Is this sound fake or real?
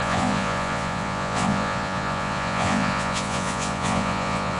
fake